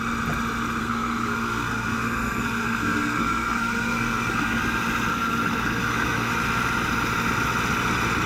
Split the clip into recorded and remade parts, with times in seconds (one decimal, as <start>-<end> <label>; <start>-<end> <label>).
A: 0.0-0.8 recorded; 0.8-4.6 remade; 4.6-5.1 recorded; 5.1-6.3 remade; 6.3-8.3 recorded

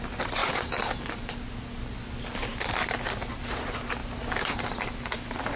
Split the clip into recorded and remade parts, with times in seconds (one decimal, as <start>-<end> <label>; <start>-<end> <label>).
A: 0.0-5.6 recorded

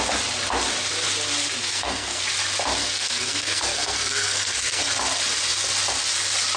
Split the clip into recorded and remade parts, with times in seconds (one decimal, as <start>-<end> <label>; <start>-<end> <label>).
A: 0.0-1.6 recorded; 1.6-2.2 remade; 2.2-2.8 recorded; 2.8-4.8 remade; 4.8-6.6 recorded

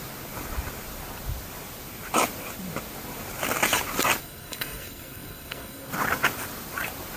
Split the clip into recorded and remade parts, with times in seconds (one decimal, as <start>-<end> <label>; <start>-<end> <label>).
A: 0.0-4.2 recorded; 4.2-5.9 remade; 5.9-7.2 recorded

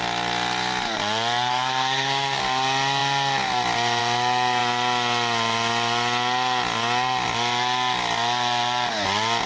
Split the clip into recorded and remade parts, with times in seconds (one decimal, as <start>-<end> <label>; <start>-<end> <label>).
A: 0.0-1.5 recorded; 1.5-2.4 remade; 2.4-9.5 recorded

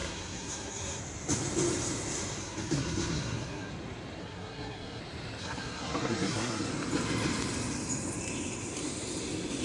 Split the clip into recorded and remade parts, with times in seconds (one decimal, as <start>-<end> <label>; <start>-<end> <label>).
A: 0.0-1.0 remade; 1.0-2.4 recorded; 2.4-3.7 remade; 3.7-4.2 recorded; 4.2-5.0 remade; 5.0-5.4 recorded; 5.4-6.7 remade; 6.7-9.6 recorded